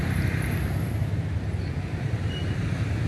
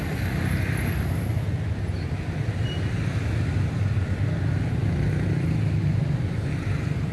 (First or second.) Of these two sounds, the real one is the second